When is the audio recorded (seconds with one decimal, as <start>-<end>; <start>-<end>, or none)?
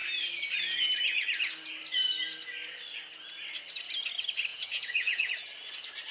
0.0-4.5; 5.3-6.1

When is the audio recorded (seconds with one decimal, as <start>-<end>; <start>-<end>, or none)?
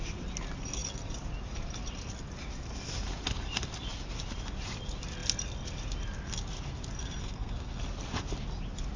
0.0-7.2; 7.8-9.0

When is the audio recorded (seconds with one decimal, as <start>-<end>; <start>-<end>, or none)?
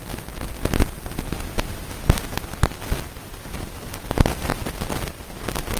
0.0-5.8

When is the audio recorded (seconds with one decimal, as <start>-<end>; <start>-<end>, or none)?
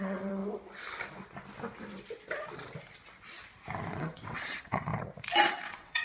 0.4-4.0; 4.9-5.5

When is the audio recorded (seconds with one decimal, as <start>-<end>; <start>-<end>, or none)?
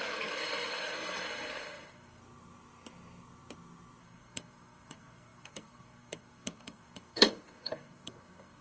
2.2-4.0